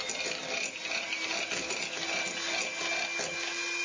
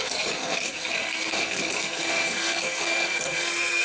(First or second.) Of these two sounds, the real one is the first